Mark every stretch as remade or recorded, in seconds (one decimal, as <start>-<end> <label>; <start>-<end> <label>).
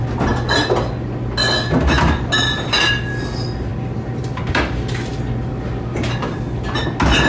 0.0-7.3 recorded